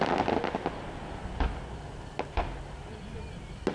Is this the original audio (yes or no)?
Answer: yes